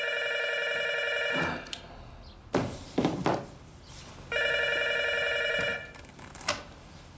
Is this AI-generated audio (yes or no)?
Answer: no